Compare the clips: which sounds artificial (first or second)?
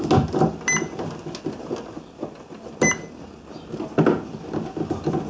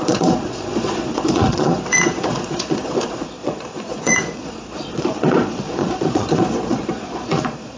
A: second